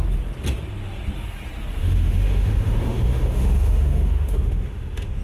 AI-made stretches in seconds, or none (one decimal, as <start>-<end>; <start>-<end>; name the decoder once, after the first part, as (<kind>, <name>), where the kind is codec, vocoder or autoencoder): 1.8-5.2 (autoencoder, DAC-VAE)